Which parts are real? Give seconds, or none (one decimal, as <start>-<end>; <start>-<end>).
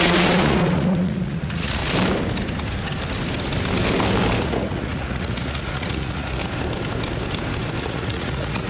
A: 1.8-4.4; 6.4-7.8